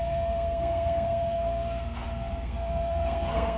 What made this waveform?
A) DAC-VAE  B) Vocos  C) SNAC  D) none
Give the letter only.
C